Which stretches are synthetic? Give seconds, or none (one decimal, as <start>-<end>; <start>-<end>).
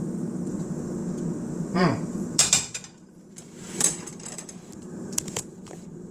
0.0-1.0; 1.5-2.4; 2.9-6.1